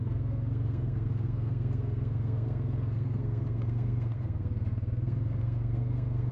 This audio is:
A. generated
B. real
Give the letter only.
A